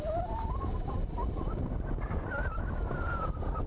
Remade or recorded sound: recorded